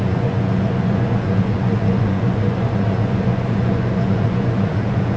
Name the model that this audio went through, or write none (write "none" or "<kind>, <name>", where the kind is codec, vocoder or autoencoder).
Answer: vocoder, Vocos